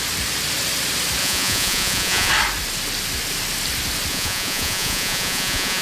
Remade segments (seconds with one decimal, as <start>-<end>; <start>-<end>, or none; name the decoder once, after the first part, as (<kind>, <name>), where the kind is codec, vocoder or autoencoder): 1.2-2.3 (vocoder, Vocos); 4.1-5.8